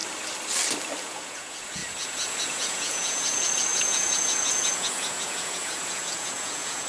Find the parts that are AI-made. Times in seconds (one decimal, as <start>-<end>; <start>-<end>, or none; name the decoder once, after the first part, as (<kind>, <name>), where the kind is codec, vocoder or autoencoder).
1.0-6.9 (vocoder, Vocos)